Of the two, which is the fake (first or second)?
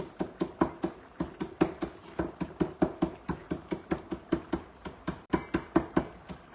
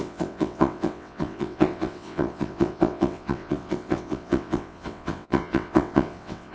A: second